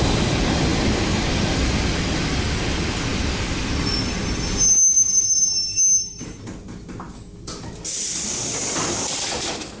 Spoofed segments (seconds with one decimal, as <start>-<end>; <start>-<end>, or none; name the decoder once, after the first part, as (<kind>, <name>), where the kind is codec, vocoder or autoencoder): none